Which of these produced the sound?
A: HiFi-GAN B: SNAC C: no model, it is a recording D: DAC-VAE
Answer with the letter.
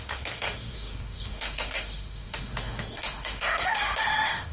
D